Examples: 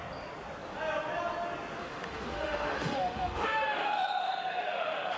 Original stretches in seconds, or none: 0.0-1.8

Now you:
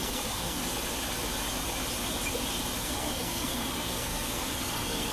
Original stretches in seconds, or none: 0.6-2.8

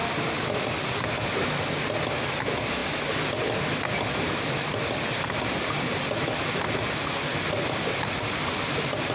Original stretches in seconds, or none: 0.0-2.8; 5.8-7.3; 8.5-9.1

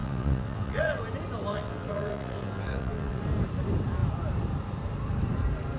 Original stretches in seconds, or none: 1.0-1.5; 3.2-5.8

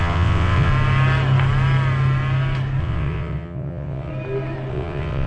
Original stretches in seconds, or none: 0.7-2.8; 4.1-4.7